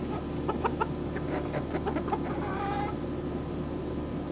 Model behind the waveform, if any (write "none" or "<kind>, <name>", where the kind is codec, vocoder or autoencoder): vocoder, BigVGAN v2